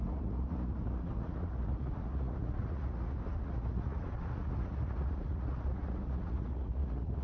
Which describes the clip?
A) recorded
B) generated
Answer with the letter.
B